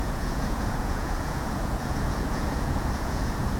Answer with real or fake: fake